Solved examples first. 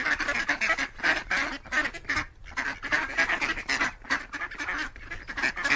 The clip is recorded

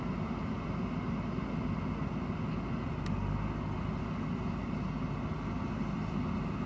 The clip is recorded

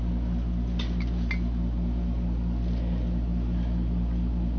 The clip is recorded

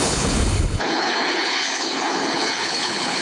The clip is remade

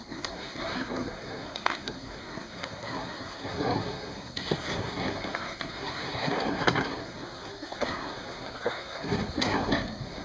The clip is remade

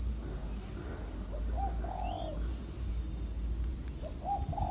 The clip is recorded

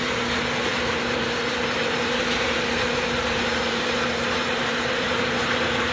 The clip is remade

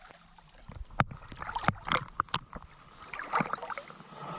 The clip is recorded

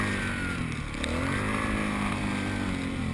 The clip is recorded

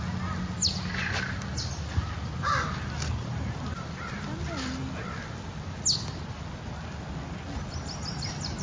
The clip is recorded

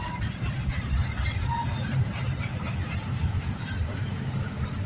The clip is recorded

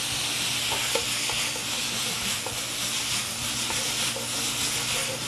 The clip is recorded